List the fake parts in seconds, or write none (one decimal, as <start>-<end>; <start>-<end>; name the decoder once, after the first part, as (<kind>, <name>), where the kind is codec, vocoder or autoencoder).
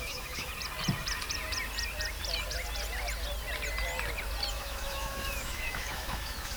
0.0-0.5 (autoencoder, DAC-VAE); 4.5-6.6